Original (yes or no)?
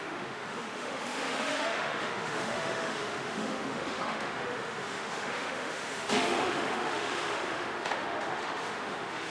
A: no